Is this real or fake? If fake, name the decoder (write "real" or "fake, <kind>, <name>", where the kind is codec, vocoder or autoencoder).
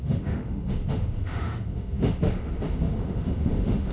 fake, autoencoder, DAC-VAE